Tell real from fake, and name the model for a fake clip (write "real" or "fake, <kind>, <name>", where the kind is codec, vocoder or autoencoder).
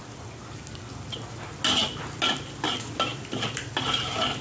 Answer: real